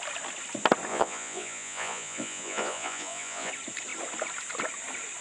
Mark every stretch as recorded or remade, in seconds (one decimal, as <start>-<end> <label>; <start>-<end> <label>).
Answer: 0.0-0.9 recorded; 0.9-3.5 remade; 3.5-5.2 recorded